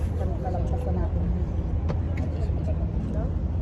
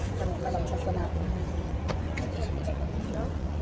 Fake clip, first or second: second